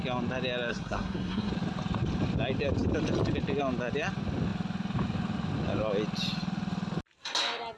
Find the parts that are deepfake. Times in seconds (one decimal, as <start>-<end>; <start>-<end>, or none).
0.7-1.5